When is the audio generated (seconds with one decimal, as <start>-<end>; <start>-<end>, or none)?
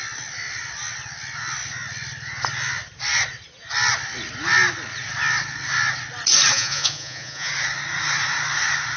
6.5-7.5